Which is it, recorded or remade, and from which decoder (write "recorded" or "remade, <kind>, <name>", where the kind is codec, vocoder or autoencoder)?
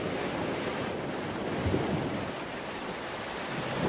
recorded